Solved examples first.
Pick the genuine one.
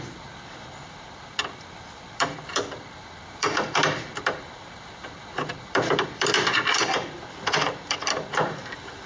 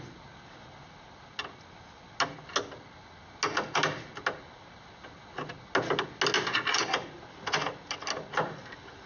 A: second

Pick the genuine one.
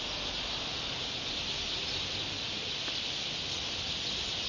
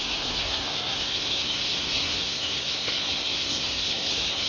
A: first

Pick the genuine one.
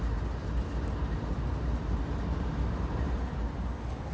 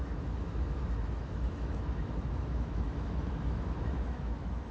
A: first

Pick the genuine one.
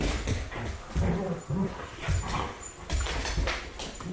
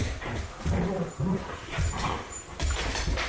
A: first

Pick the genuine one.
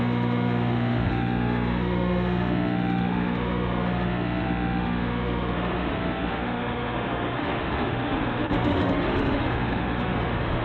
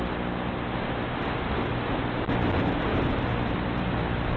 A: second